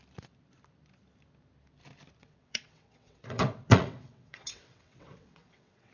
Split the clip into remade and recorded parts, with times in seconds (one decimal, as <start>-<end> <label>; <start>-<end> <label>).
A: 0.0-2.2 recorded; 2.2-5.9 remade